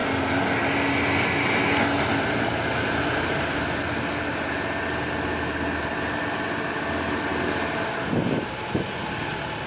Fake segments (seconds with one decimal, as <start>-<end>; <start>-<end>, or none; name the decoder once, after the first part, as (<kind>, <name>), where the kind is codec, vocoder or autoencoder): none